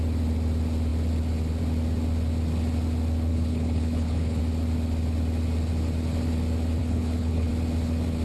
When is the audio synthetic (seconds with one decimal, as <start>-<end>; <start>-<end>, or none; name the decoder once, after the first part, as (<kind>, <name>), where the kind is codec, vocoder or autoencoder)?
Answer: 3.3-4.4 (codec, HILCodec); 6.8-7.5